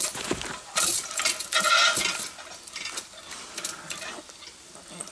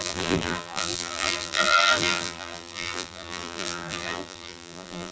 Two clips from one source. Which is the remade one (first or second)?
second